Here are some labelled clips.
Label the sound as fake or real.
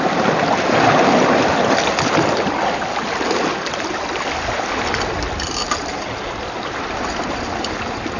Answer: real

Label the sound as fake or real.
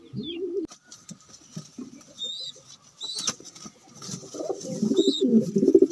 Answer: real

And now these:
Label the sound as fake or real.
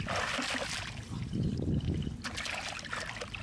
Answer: real